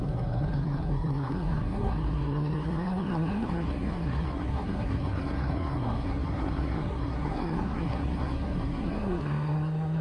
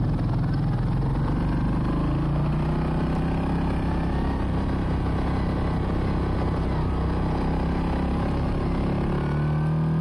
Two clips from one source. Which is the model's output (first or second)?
first